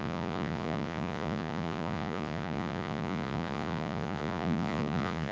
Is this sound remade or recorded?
remade